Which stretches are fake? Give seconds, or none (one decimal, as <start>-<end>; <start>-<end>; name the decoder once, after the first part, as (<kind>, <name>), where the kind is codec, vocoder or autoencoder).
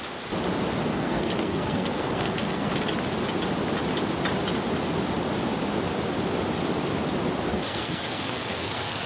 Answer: 0.9-2.7 (codec, SNAC); 7.5-9.1